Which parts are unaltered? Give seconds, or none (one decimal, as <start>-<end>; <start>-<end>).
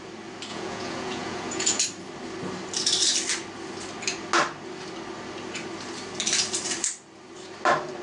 0.0-0.5; 1.8-8.0